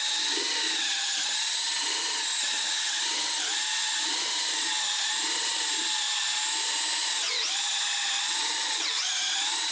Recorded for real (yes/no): yes